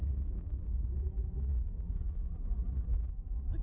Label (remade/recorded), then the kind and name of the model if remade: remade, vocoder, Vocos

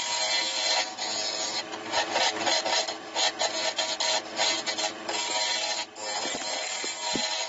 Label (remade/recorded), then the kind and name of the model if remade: recorded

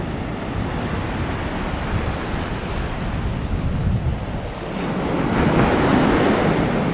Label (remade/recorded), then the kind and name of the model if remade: recorded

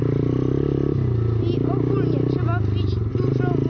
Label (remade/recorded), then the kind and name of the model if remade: recorded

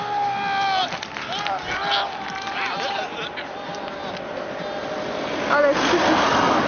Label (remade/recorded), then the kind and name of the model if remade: recorded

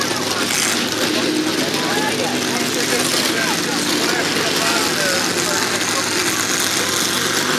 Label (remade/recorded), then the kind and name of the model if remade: recorded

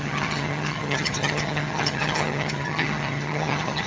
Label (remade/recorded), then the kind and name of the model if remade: remade, vocoder, HiFi-GAN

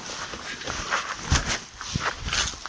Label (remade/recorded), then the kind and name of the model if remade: recorded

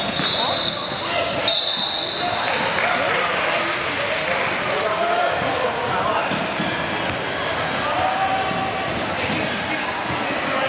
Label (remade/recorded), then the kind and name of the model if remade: recorded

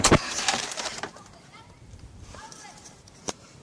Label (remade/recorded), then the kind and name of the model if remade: remade, vocoder, BigVGAN v2